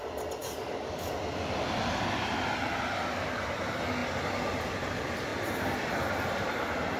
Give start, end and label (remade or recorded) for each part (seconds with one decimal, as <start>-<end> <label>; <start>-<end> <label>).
0.0-0.4 recorded; 0.4-1.1 remade; 1.1-7.0 recorded